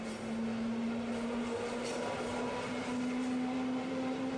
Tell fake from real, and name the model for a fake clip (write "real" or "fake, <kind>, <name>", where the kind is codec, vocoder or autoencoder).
real